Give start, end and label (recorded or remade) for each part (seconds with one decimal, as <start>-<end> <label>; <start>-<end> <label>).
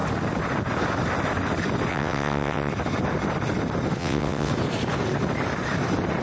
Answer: 0.0-1.9 recorded; 1.9-2.7 remade; 2.7-4.0 recorded; 4.0-4.5 remade; 4.5-6.2 recorded